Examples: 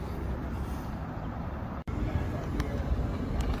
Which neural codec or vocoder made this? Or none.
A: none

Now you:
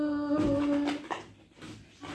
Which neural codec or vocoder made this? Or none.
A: none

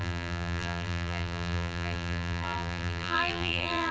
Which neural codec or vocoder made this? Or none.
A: vocoder, BigVGAN v2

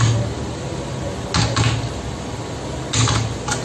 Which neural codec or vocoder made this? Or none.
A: none